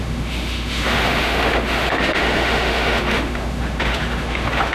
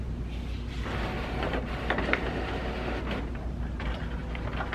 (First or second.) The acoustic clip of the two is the second